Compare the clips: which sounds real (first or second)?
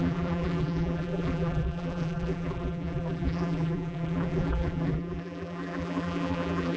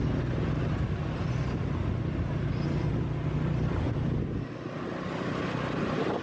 second